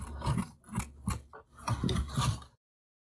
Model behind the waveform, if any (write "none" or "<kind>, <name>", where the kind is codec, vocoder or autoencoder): none